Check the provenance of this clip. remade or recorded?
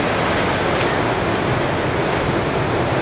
recorded